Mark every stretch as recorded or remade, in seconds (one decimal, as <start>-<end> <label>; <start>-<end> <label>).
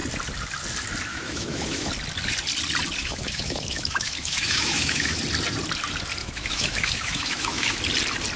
0.0-1.1 recorded; 1.1-1.9 remade; 1.9-3.0 recorded; 3.0-5.2 remade; 5.2-6.2 recorded; 6.2-7.8 remade; 7.8-8.4 recorded